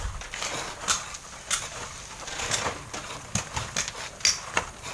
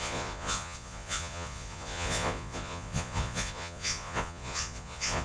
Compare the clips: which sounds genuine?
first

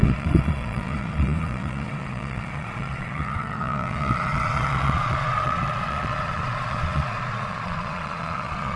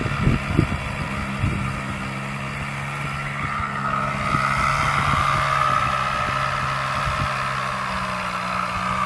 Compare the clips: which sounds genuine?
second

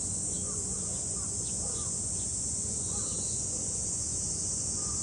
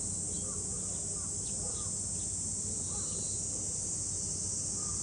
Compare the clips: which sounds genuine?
second